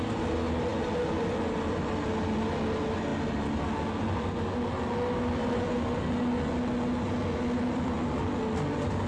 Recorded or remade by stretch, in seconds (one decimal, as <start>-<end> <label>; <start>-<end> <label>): 0.0-9.1 recorded